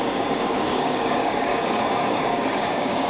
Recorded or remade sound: remade